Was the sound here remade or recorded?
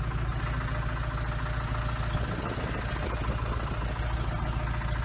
recorded